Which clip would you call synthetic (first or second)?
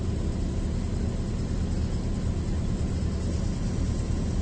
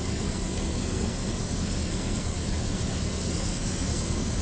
second